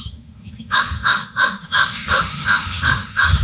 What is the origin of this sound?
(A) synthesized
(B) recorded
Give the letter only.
A